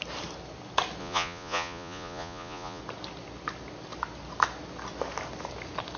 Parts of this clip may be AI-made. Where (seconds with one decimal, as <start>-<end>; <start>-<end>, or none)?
1.0-2.8